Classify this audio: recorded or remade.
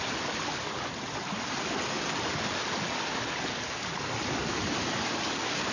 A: recorded